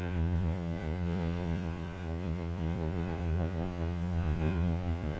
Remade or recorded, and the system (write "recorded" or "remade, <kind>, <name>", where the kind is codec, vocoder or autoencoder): remade, vocoder, Vocos